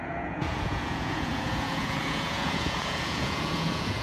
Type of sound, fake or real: fake